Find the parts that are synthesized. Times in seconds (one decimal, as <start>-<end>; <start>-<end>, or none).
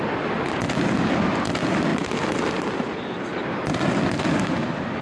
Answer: none